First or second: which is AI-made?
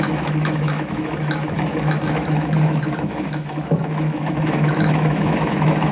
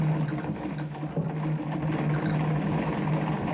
first